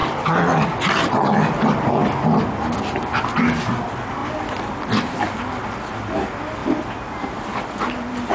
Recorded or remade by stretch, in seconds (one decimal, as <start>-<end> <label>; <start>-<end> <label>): 0.0-8.3 recorded